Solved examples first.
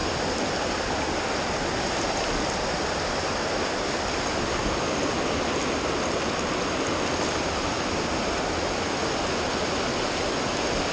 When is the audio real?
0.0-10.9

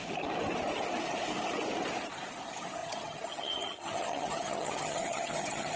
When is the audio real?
0.0-2.8

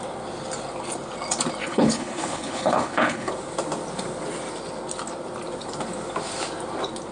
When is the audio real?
0.0-1.6; 3.3-7.1

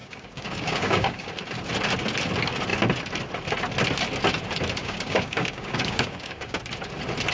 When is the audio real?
1.3-4.8; 6.6-7.3

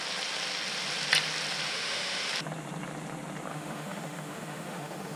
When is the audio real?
0.0-1.7; 2.3-3.5